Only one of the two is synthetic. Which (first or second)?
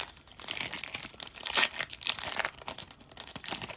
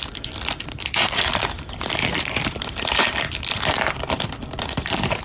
second